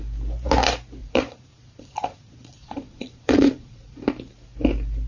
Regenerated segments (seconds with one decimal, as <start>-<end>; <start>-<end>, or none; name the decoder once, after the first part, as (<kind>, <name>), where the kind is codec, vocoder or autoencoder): 1.0-4.1 (vocoder, Vocos)